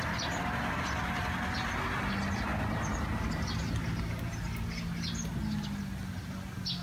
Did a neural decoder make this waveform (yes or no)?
no